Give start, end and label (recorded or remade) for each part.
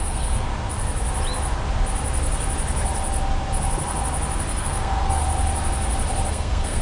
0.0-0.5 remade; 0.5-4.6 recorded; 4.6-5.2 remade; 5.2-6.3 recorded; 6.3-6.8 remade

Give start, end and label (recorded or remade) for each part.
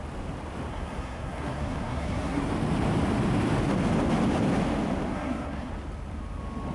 0.0-0.7 recorded; 0.7-2.5 remade; 2.5-5.1 recorded; 5.1-5.7 remade; 5.7-6.7 recorded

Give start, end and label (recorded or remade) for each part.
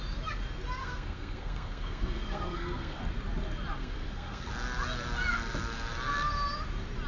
0.0-0.8 recorded; 0.8-3.0 remade; 3.0-3.8 recorded; 3.8-4.5 remade; 4.5-7.1 recorded